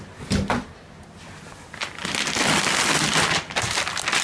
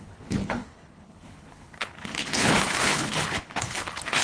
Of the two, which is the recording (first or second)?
first